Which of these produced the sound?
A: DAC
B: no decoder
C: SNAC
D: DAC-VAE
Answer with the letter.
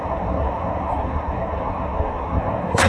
C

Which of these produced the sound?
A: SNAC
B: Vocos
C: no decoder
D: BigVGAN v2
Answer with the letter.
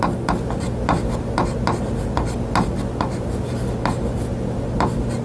C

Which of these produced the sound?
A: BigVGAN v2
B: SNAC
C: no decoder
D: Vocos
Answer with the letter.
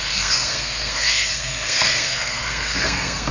B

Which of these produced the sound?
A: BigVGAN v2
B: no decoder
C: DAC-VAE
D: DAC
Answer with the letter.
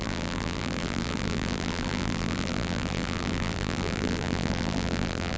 A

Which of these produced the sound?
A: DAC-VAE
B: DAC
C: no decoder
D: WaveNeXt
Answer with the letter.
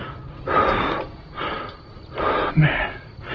C